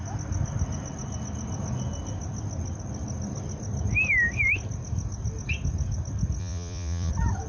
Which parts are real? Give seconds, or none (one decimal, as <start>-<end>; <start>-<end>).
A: 0.0-6.4; 7.1-7.5